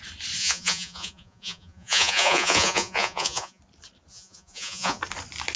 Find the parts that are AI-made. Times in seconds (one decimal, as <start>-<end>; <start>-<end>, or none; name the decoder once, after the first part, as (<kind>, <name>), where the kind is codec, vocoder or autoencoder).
0.4-3.6 (vocoder, Vocos); 4.1-5.0